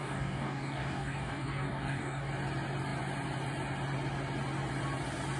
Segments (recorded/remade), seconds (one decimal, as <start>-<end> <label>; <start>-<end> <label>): 0.0-2.3 remade; 2.3-5.4 recorded